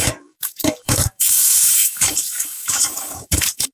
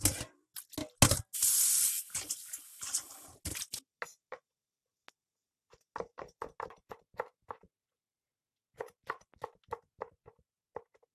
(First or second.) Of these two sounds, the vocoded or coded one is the first